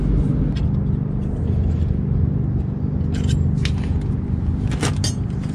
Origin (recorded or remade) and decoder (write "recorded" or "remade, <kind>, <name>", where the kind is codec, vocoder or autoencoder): recorded